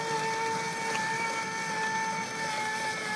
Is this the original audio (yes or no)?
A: yes